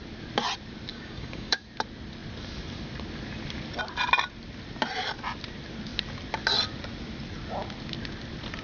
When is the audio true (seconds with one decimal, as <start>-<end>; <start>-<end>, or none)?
0.0-0.9; 1.6-8.6